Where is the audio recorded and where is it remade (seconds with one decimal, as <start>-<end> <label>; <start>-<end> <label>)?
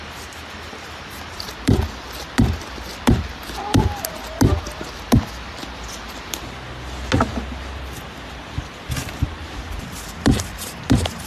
0.0-11.3 recorded